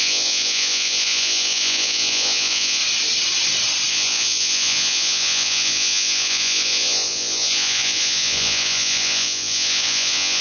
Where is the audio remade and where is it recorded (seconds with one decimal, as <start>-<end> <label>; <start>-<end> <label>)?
0.0-2.8 remade; 2.8-3.9 recorded; 3.9-10.4 remade